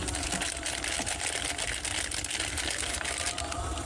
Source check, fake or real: real